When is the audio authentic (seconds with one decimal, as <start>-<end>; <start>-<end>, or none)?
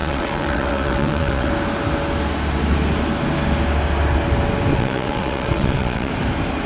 1.5-4.7; 6.1-6.7